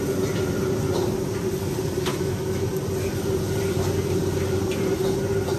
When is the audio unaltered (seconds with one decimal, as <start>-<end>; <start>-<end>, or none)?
0.0-2.1; 2.7-5.6